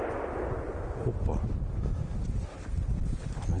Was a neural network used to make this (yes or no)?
no